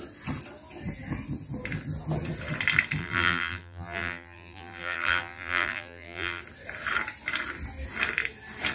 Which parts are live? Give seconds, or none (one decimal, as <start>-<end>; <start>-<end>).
0.0-3.0; 6.4-8.7